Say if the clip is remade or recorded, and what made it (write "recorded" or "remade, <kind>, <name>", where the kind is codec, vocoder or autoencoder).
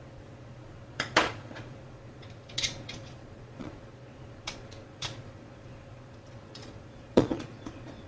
remade, vocoder, Vocos